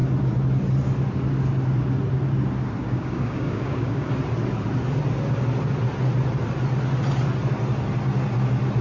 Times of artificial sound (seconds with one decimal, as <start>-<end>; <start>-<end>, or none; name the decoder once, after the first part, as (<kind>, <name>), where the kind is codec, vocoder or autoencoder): 2.8-4.1 (codec, DAC)